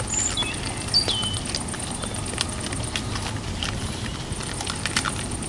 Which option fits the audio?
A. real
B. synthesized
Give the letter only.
A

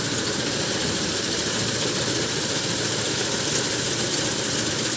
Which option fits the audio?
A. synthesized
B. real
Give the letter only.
A